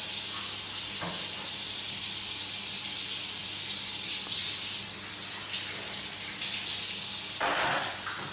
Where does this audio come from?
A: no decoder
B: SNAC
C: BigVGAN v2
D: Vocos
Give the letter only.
A